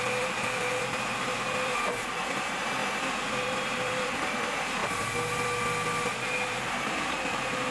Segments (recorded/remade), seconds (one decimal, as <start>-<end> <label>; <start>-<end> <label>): 0.0-2.8 remade; 2.8-3.3 recorded; 3.3-4.8 remade; 4.8-6.9 recorded; 6.9-7.7 remade